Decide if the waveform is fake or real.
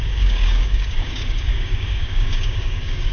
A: fake